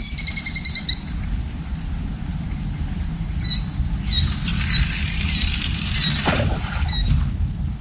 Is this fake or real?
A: real